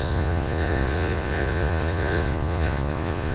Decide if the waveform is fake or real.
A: fake